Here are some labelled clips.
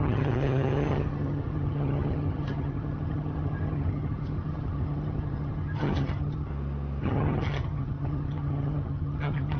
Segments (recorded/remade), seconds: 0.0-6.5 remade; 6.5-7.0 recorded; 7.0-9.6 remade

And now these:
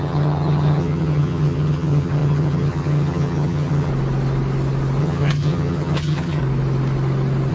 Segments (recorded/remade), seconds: 0.0-3.9 remade; 3.9-5.0 recorded; 5.0-6.4 remade; 6.4-7.5 recorded

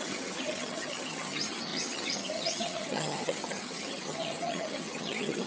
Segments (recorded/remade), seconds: 0.0-5.5 remade

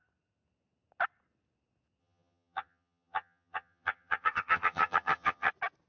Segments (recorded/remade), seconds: 0.0-2.0 recorded; 2.0-5.5 remade; 5.5-5.9 recorded